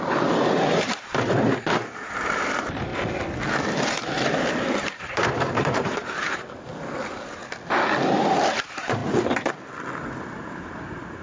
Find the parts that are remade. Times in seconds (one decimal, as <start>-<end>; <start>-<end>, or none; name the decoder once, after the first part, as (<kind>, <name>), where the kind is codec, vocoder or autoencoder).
0.0-2.9 (vocoder, BigVGAN v2); 3.9-6.7; 8.6-9.0; 10.2-11.2